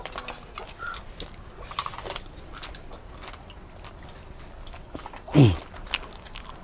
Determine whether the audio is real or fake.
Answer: real